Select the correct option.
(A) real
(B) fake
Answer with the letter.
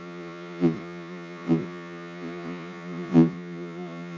B